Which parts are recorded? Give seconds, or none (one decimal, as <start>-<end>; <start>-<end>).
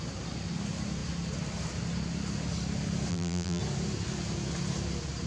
0.0-3.1; 3.6-5.3